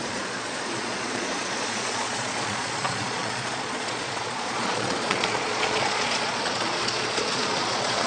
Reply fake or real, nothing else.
fake